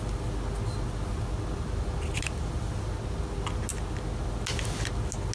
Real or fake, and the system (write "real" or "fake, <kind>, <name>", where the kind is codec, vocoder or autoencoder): real